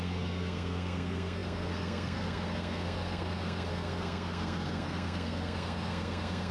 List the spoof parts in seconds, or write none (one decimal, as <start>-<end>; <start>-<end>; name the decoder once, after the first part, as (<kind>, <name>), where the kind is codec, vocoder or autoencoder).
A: 0.0-6.5 (codec, SNAC)